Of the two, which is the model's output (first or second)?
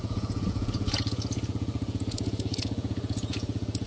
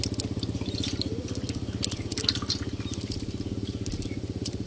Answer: first